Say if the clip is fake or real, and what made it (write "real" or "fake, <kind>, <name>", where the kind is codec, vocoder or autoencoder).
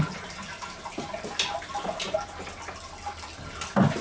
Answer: real